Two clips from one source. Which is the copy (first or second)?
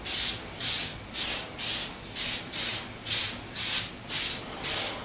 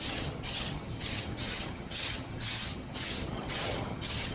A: second